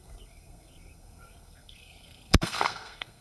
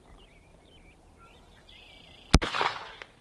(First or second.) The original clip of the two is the second